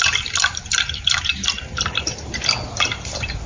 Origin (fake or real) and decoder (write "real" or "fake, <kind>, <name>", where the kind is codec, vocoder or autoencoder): real